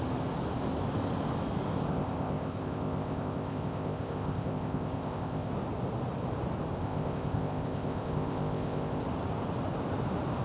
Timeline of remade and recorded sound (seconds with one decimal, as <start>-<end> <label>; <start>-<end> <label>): 0.0-1.9 recorded; 1.9-5.5 remade; 5.5-6.8 recorded; 6.8-9.0 remade; 9.0-10.4 recorded